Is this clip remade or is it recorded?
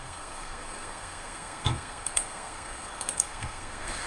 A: remade